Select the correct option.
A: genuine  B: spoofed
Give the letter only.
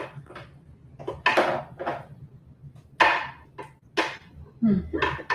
A